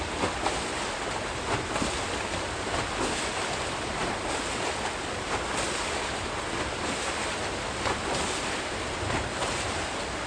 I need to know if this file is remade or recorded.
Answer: recorded